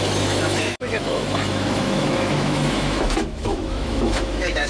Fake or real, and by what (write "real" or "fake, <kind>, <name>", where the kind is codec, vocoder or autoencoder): fake, autoencoder, DAC-VAE